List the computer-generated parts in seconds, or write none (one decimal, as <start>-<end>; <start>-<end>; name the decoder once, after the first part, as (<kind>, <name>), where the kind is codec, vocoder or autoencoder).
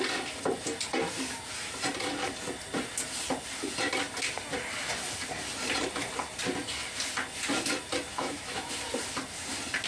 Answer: 8.1-8.7 (autoencoder, DAC-VAE)